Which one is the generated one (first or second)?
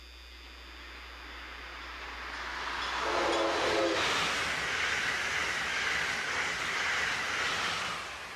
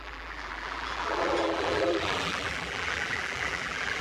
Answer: second